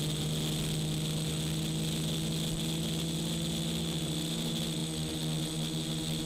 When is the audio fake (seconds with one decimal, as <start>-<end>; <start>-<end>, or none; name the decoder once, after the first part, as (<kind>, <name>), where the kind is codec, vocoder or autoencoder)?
none